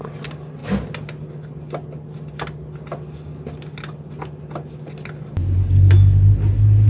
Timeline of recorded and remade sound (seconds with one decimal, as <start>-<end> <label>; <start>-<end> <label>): 0.0-6.9 recorded